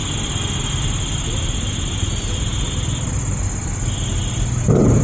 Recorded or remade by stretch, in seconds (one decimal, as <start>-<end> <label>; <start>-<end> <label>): 0.0-5.0 recorded